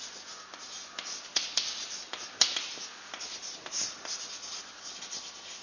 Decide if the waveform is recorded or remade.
recorded